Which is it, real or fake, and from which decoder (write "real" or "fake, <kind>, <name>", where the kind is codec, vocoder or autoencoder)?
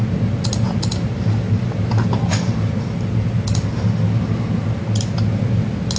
real